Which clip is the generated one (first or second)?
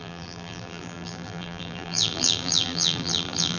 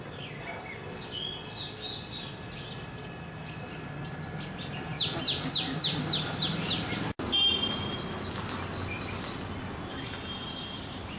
first